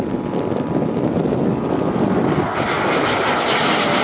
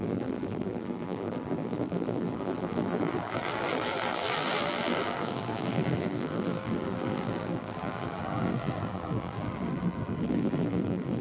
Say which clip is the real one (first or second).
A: first